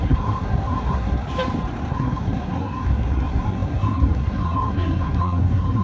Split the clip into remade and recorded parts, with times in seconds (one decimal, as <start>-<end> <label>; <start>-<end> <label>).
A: 0.0-1.2 remade; 1.2-1.9 recorded; 1.9-5.8 remade